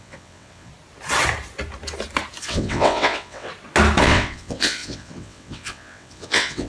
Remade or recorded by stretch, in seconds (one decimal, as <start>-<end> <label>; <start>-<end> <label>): 0.0-0.7 remade; 0.7-2.4 recorded; 2.4-3.5 remade; 3.5-4.0 recorded; 4.0-6.7 remade